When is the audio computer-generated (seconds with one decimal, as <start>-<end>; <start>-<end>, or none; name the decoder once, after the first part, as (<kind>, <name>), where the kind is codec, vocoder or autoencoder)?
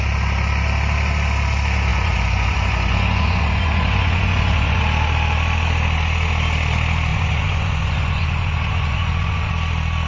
1.9-4.8 (vocoder, Vocos); 7.1-9.5